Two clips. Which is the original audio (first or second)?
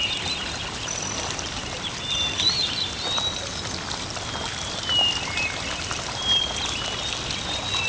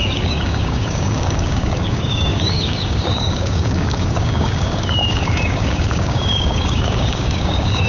first